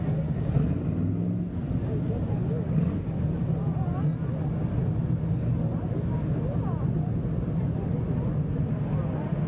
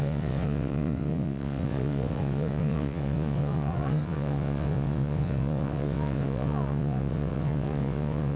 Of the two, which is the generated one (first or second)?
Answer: second